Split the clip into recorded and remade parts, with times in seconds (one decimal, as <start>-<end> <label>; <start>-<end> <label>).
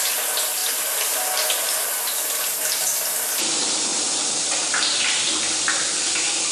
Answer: 0.0-3.9 recorded; 3.9-5.0 remade; 5.0-6.5 recorded